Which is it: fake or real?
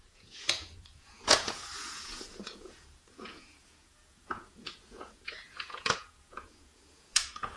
fake